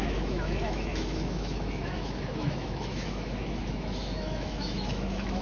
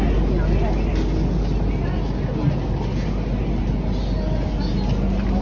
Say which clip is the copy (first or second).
first